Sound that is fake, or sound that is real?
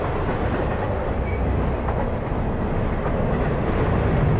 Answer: real